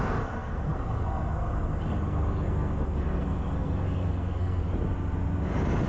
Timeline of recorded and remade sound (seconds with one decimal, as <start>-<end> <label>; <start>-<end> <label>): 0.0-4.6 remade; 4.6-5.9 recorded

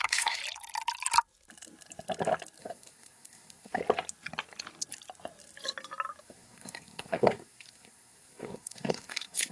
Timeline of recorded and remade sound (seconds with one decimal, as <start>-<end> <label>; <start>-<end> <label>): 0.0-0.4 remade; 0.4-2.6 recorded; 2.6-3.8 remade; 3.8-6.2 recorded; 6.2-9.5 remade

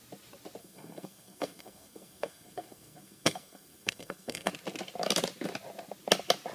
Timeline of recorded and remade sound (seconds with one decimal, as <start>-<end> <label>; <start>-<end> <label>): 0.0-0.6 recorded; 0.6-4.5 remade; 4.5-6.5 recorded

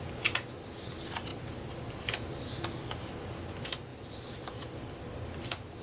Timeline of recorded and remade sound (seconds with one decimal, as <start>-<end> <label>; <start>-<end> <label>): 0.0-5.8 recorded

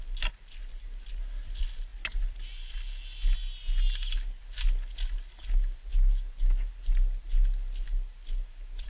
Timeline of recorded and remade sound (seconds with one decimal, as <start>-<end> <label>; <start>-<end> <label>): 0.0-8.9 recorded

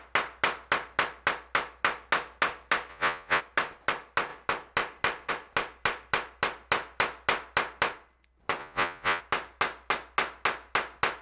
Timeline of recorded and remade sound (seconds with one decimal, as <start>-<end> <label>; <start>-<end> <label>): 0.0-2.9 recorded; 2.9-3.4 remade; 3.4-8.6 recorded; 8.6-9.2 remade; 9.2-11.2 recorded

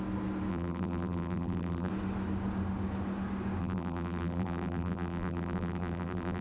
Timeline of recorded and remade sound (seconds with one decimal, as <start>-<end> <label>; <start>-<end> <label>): 0.0-0.5 recorded; 0.5-1.9 remade; 1.9-3.6 recorded; 3.6-6.4 remade

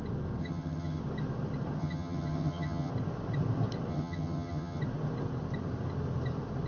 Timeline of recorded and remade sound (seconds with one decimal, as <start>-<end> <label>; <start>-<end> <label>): 0.0-0.4 recorded; 0.4-1.0 remade; 1.0-1.8 recorded; 1.8-2.9 remade; 2.9-3.9 recorded; 3.9-4.8 remade; 4.8-6.7 recorded